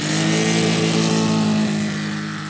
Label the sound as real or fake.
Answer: real